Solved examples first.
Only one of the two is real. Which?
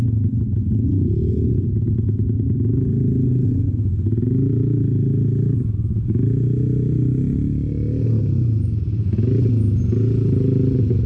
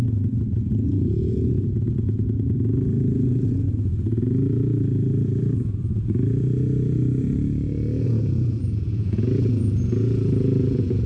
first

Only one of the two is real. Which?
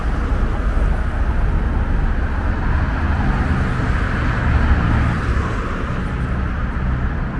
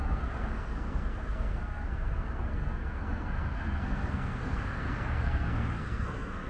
first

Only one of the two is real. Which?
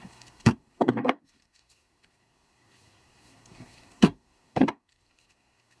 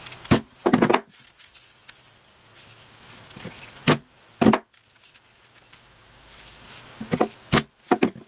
second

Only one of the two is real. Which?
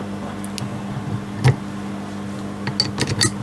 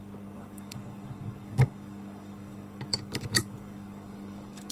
first